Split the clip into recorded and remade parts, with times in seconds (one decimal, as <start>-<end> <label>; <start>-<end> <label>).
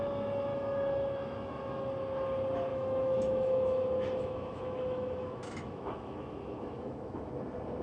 0.0-0.5 recorded; 0.5-1.9 remade; 1.9-2.7 recorded; 2.7-7.3 remade; 7.3-7.8 recorded